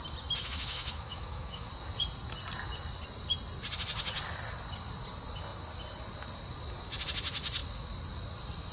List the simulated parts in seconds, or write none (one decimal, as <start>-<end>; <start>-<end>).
0.4-1.7